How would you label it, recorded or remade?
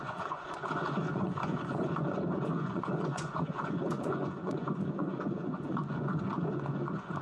remade